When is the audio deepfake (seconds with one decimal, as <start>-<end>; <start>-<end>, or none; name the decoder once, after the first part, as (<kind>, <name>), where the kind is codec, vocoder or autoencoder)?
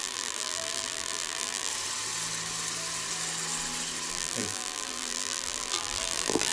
0.0-1.7 (vocoder, BigVGAN v2); 4.1-6.5